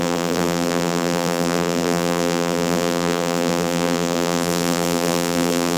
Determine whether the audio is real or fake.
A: fake